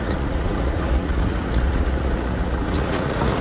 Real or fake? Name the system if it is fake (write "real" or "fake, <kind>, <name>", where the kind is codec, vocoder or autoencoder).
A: fake, vocoder, Vocos